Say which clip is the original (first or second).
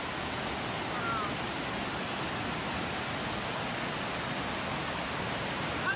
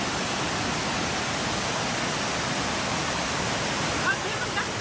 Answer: first